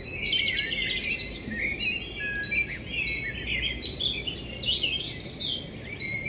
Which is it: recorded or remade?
recorded